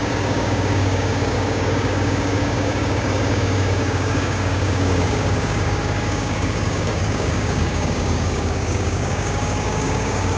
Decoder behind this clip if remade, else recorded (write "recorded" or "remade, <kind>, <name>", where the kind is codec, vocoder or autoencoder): remade, codec, DAC